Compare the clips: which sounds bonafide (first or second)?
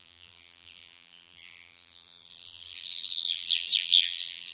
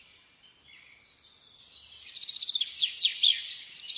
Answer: second